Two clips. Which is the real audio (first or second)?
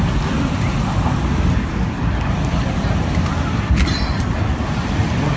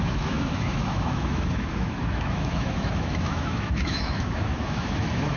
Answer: first